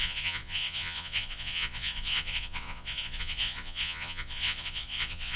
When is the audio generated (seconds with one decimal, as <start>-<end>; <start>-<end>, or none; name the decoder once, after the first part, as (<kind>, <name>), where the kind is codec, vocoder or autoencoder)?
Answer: 0.0-5.4 (vocoder, Vocos)